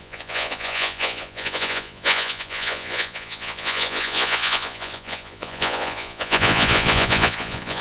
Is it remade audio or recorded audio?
remade